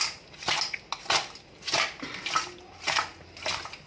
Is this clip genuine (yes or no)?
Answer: yes